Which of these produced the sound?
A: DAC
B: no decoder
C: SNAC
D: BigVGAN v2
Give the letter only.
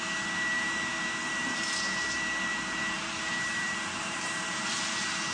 D